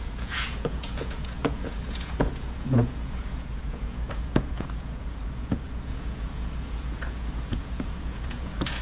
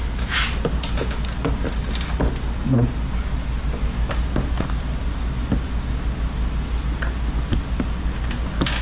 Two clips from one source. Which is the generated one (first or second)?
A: first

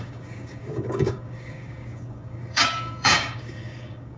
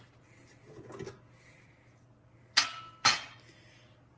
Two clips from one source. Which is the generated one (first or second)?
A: first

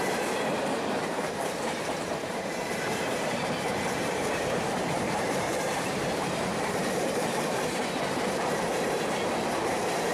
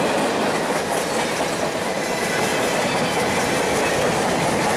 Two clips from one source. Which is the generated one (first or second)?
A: first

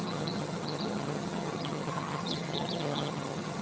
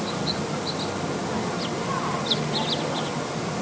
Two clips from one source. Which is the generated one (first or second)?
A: first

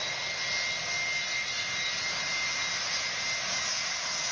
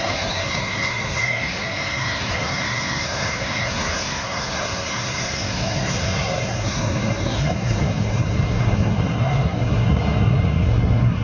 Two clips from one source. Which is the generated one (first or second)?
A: second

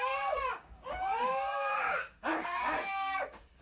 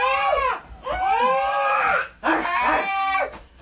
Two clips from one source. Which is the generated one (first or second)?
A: first